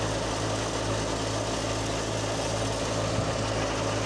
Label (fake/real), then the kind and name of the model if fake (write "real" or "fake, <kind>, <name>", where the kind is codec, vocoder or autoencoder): real